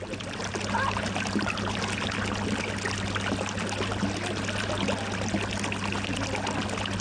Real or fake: real